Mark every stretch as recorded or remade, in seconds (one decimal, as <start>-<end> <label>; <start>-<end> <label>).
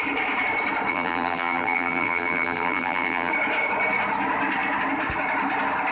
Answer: 0.0-0.9 recorded; 0.9-3.3 remade; 3.3-5.9 recorded